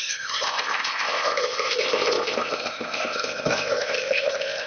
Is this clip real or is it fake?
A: fake